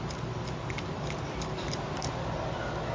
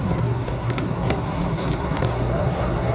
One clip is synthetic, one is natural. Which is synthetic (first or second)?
second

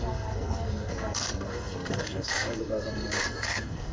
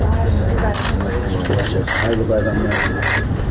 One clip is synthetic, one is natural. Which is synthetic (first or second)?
first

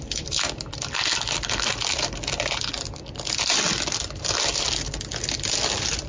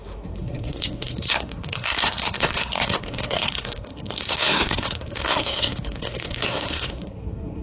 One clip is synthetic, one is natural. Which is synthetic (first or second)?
second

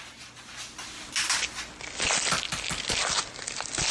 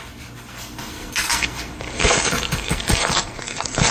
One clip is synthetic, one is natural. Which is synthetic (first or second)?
second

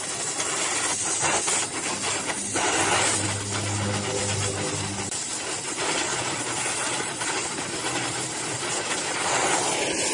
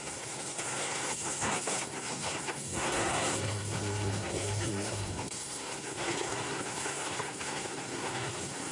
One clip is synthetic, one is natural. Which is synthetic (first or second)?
second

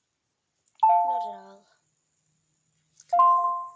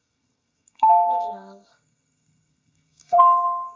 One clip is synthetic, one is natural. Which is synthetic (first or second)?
second